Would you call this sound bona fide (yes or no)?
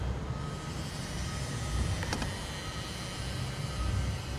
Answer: yes